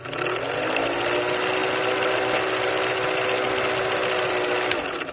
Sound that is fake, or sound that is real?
real